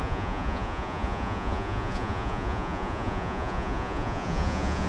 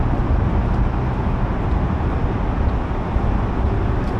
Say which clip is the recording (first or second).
second